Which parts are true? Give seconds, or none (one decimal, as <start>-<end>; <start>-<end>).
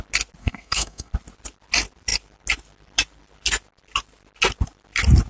0.0-0.4; 1.1-5.3